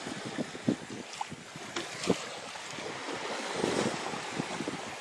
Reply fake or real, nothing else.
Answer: real